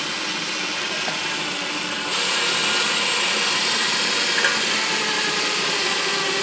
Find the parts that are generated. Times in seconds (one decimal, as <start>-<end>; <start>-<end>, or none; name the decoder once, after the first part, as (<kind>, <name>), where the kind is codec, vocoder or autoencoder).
none